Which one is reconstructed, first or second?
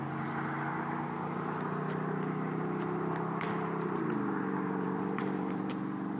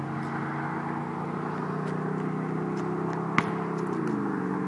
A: first